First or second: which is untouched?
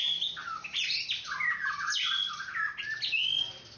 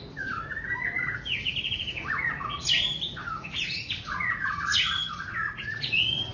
first